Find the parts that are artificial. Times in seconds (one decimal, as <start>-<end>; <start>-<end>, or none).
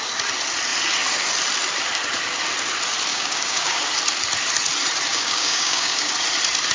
3.1-3.8; 5.1-6.1